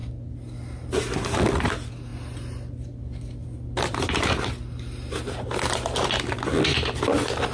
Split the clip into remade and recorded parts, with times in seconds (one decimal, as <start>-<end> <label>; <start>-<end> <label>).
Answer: 0.0-7.5 recorded